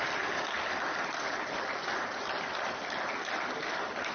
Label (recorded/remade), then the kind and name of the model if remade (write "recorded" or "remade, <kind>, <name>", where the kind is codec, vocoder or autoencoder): recorded